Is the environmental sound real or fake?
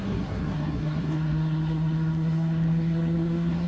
fake